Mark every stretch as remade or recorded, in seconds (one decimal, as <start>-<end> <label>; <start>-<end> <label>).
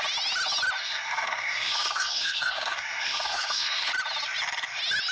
0.0-0.8 recorded; 0.8-3.9 remade; 3.9-5.1 recorded